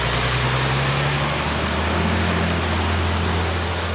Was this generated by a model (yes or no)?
no